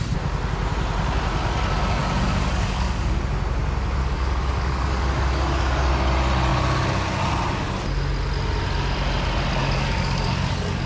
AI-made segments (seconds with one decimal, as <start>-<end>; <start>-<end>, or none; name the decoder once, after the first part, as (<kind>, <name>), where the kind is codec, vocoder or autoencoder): 1.4-3.2 (codec, DAC); 4.0-5.9; 9.6-10.9